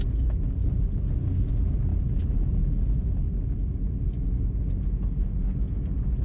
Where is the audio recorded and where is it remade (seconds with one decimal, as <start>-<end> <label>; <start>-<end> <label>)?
0.0-6.2 recorded